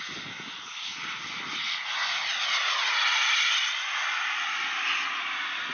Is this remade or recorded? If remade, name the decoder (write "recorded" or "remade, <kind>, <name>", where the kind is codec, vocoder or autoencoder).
recorded